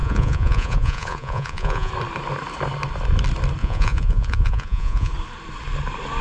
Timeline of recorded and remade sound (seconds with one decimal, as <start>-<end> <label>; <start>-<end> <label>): 0.0-1.9 remade; 1.9-3.6 recorded; 3.6-5.1 remade; 5.1-6.2 recorded